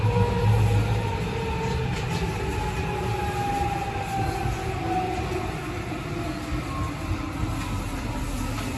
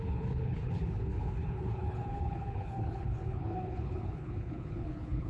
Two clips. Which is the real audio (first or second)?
first